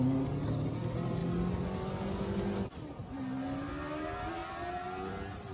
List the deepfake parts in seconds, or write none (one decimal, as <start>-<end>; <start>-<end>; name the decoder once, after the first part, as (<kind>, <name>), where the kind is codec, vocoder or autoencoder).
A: 3.0-3.7 (vocoder, BigVGAN v2)